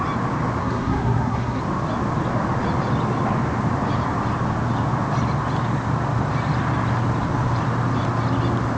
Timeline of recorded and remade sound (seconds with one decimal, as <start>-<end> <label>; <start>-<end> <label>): 0.0-0.6 recorded; 0.6-1.6 remade; 1.6-8.8 recorded